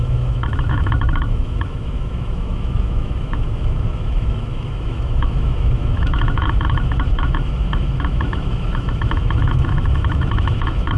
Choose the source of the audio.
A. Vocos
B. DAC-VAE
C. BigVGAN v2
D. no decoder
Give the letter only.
B